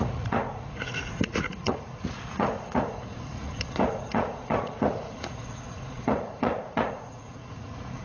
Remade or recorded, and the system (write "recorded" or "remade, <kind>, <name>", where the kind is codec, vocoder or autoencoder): remade, vocoder, Vocos